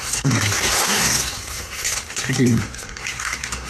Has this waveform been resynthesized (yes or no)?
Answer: yes